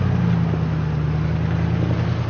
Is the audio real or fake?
real